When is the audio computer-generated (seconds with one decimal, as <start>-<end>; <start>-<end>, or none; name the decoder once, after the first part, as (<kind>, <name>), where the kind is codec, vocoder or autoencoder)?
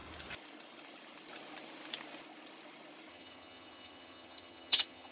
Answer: 3.1-5.1 (vocoder, HiFi-GAN)